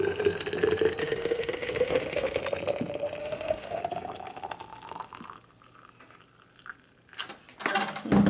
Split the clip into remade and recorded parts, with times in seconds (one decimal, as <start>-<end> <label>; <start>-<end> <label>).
0.0-1.0 recorded; 1.0-2.4 remade; 2.4-3.2 recorded; 3.2-3.8 remade; 3.8-8.3 recorded